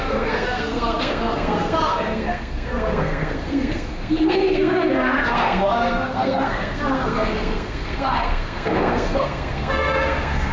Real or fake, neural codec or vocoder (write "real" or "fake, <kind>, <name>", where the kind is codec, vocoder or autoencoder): fake, codec, SNAC